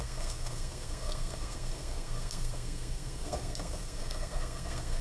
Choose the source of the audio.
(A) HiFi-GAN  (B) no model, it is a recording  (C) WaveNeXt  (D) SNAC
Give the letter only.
D